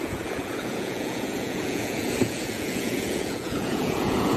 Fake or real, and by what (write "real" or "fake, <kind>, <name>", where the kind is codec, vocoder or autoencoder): fake, vocoder, Vocos